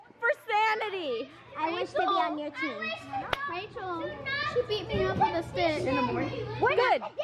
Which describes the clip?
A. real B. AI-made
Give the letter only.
A